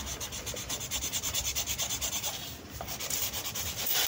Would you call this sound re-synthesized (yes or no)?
no